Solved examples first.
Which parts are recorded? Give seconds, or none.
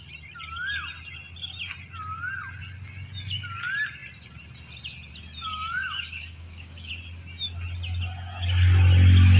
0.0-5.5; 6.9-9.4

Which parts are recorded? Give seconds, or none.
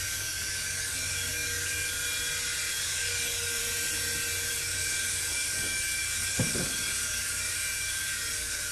2.0-2.7; 3.6-4.5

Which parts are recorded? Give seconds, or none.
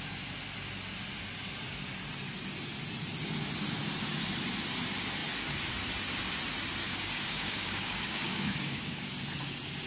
0.0-6.8; 9.1-9.9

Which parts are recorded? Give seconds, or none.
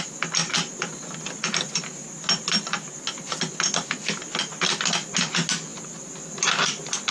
0.0-7.1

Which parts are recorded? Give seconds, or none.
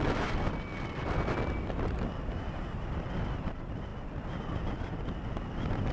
0.0-5.9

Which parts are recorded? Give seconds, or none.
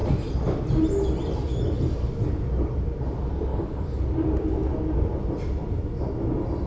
0.0-3.5; 4.0-6.7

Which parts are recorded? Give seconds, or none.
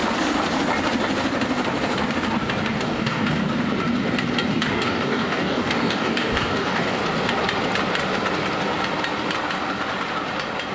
0.0-2.8; 3.4-4.5; 7.0-10.7